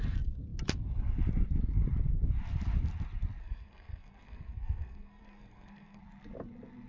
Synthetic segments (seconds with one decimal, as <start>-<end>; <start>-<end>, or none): 3.4-6.0